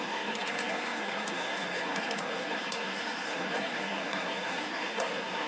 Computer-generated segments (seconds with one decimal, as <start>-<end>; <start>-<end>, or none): 0.0-5.5